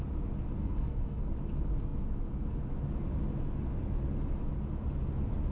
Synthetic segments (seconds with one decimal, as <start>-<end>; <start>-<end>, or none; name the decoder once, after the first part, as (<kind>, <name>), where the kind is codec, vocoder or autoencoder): 0.6-1.3 (codec, SNAC)